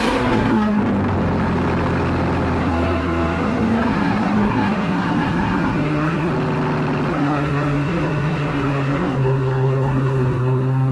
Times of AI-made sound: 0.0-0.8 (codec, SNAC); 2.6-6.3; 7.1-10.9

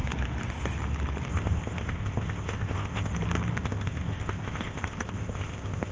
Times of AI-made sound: 1.3-3.1 (codec, ZipCodec); 3.6-5.9

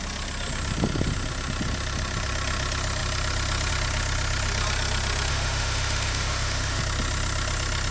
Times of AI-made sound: 5.3-6.8 (autoencoder, DAC-VAE)

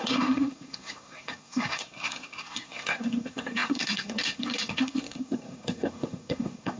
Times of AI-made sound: 0.0-6.8 (codec, SNAC)

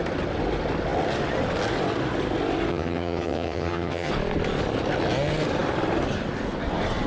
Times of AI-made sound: 2.7-4.1 (vocoder, HiFi-GAN)

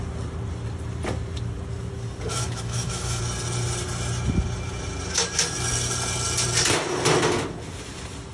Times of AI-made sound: 2.3-3.2 (autoencoder, DAC-VAE)

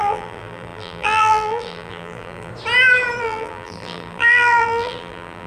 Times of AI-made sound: 0.0-2.5 (vocoder, BigVGAN v2); 3.2-5.5